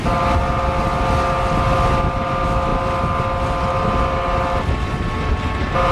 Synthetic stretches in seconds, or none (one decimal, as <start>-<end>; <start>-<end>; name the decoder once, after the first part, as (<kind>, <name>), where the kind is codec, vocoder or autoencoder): none